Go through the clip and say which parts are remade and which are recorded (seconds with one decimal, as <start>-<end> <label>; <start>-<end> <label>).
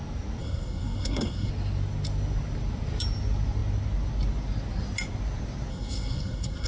0.0-0.4 recorded; 0.4-1.5 remade; 1.5-5.7 recorded; 5.7-6.7 remade